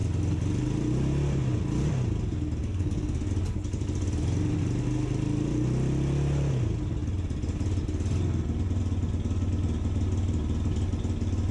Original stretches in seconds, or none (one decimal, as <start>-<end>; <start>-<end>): 0.0-2.6; 3.3-11.5